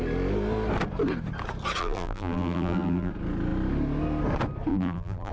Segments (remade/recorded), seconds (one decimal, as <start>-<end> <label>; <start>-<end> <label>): 0.0-1.8 recorded; 1.8-3.1 remade; 3.1-4.7 recorded; 4.7-5.3 remade